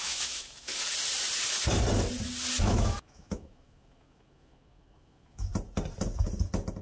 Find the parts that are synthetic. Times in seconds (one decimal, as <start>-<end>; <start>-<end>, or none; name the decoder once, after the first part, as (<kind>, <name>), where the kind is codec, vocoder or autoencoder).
0.0-0.7 (autoencoder, DAC-VAE); 2.6-5.5